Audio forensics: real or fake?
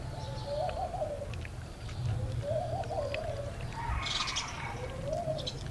real